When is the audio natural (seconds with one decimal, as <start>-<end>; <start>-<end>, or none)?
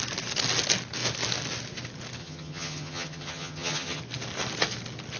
0.0-2.2; 4.0-5.2